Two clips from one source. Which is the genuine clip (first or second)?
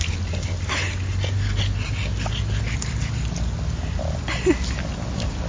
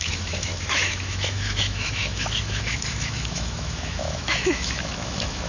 first